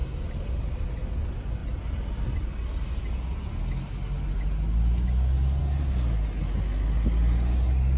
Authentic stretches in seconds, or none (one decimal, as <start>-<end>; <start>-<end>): 0.0-8.0